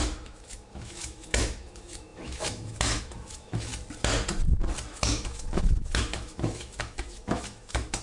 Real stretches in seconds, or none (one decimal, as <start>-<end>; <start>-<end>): 3.7-4.9

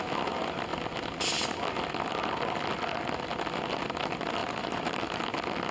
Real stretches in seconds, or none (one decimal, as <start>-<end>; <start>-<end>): 0.0-4.4; 5.2-5.7

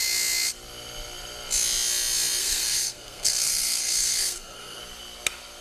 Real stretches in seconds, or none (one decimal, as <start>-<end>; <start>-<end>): 0.0-2.4; 4.8-5.6

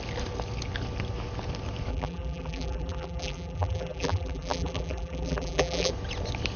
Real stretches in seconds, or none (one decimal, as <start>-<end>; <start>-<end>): 0.0-1.9; 5.9-6.6

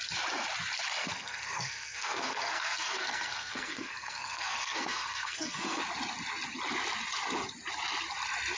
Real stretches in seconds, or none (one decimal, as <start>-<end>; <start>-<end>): 0.0-1.0; 5.8-8.6

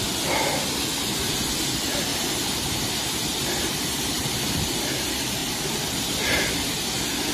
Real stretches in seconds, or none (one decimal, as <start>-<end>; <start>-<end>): 0.0-2.1; 2.9-3.6; 4.2-7.3